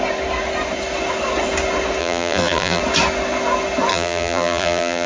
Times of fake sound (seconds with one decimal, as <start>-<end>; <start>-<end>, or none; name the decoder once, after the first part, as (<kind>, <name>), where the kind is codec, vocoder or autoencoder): 2.0-2.8 (vocoder, BigVGAN v2); 3.9-5.1

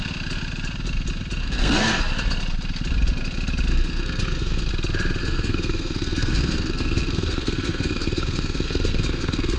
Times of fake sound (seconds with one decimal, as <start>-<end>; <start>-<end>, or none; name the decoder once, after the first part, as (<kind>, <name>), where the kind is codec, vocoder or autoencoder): 1.4-2.0 (codec, SNAC); 3.7-4.7; 5.2-9.6